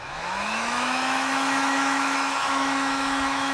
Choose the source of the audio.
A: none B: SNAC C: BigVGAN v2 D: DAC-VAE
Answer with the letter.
D